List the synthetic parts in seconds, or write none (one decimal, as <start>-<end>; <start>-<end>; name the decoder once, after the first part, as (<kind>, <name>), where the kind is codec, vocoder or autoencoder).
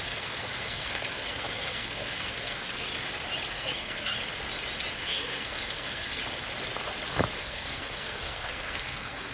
0.0-2.9 (codec, SNAC); 3.5-4.1; 4.9-6.2; 7.4-9.3